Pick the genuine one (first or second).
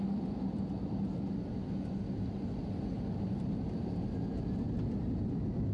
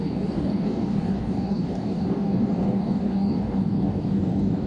first